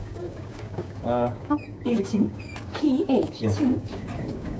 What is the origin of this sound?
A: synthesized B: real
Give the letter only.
A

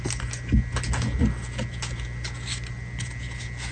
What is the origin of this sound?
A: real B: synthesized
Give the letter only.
A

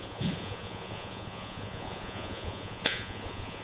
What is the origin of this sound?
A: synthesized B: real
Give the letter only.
A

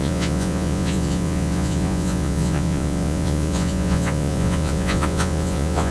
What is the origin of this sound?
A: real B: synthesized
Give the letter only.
B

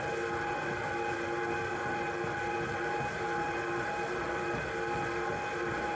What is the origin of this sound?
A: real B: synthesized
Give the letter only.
A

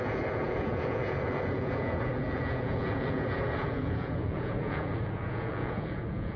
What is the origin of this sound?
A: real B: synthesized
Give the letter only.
B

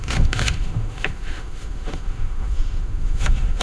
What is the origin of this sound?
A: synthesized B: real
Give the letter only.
A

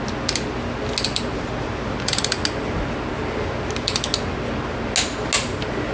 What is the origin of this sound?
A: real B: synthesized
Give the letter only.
A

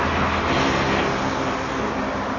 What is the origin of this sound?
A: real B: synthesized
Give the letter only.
A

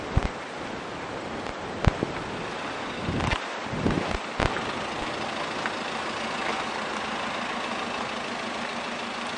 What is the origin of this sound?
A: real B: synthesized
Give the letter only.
A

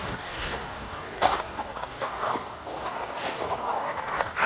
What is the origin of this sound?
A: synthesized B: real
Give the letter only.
A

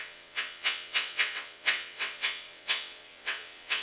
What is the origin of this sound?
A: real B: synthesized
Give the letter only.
B